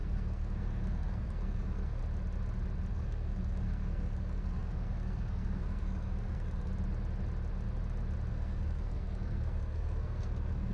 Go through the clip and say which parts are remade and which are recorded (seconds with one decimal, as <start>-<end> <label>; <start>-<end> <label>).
0.0-2.0 remade; 2.0-2.9 recorded; 2.9-6.7 remade; 6.7-8.3 recorded; 8.3-10.7 remade